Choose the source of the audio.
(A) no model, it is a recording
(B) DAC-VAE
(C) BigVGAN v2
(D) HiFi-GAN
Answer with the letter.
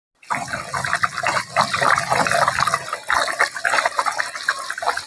A